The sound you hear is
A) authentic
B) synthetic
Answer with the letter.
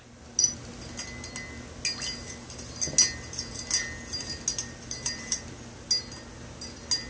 A